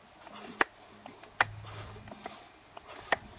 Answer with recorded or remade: recorded